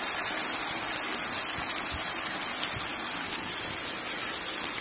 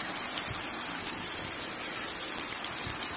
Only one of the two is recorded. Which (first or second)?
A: first